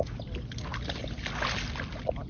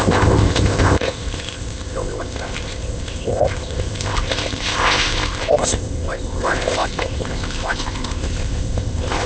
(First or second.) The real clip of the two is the first